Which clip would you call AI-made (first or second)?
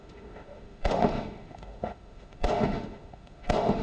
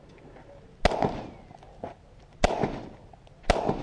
first